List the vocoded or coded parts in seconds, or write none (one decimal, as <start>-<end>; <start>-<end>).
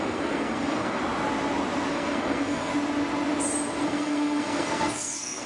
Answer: 0.0-1.0; 1.9-2.7; 3.8-5.5